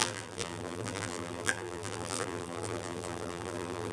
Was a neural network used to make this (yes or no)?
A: yes